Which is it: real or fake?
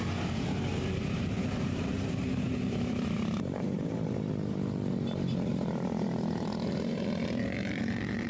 fake